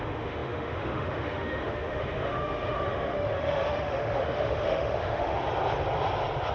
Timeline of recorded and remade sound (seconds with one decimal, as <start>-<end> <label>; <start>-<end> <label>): 0.0-5.4 remade; 5.4-6.5 recorded